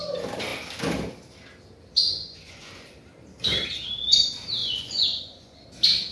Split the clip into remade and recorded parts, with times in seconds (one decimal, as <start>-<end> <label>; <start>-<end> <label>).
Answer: 0.0-2.0 recorded; 2.0-2.9 remade; 2.9-4.6 recorded; 4.6-5.6 remade; 5.6-6.1 recorded